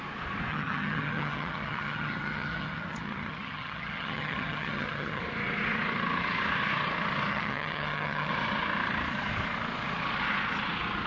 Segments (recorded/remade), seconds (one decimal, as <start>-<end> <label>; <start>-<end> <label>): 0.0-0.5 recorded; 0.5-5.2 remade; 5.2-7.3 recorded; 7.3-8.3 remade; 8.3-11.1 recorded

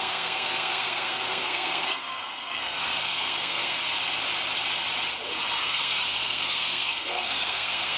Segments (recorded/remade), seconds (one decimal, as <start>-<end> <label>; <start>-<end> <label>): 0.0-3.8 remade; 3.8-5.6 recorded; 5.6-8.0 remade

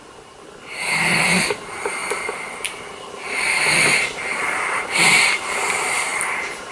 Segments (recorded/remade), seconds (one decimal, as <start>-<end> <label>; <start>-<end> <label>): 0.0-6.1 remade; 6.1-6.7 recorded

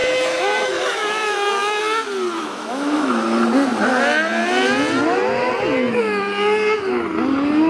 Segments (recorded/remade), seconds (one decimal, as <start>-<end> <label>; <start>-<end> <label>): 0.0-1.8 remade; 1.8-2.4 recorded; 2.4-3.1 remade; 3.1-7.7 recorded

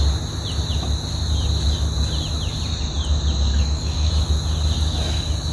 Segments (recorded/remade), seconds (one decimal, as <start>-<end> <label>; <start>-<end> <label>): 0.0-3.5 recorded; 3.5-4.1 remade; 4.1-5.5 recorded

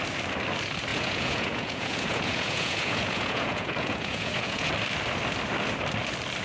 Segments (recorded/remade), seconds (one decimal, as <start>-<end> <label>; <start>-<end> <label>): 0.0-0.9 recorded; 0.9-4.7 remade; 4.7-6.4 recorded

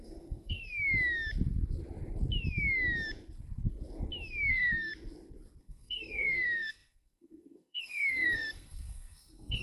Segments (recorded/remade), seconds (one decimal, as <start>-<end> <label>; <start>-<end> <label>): 0.0-0.6 remade; 0.6-4.5 recorded; 4.5-4.9 remade; 4.9-5.6 recorded; 5.6-9.6 remade